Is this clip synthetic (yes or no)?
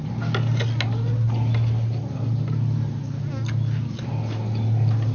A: no